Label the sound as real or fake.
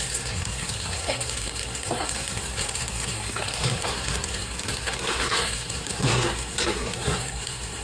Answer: fake